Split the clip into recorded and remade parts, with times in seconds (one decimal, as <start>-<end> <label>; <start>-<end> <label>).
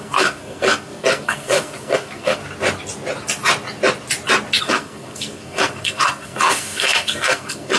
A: 0.0-2.4 remade; 2.4-4.6 recorded; 4.6-7.8 remade